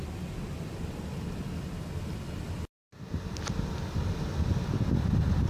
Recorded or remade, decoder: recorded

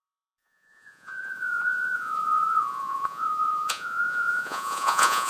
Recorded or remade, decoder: remade, vocoder, Vocos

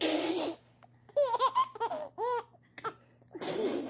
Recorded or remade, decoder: recorded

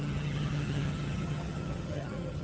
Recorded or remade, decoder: remade, vocoder, HiFi-GAN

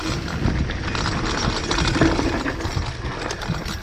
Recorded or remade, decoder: recorded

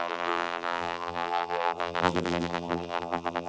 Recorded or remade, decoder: remade, vocoder, BigVGAN v2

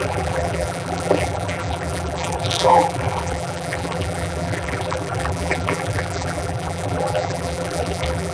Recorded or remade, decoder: remade, vocoder, BigVGAN v2